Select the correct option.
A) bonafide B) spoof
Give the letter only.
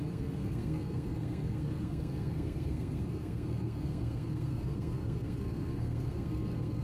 B